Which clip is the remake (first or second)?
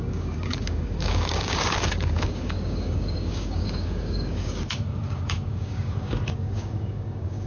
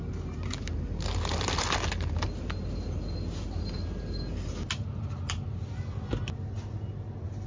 first